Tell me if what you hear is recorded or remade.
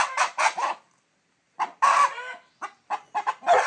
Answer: remade